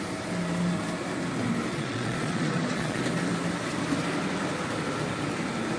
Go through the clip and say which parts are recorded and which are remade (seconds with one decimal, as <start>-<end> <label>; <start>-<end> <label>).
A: 0.0-1.7 recorded; 1.7-3.0 remade; 3.0-5.8 recorded